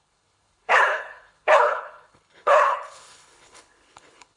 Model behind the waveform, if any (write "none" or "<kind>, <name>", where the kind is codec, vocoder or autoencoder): codec, HILCodec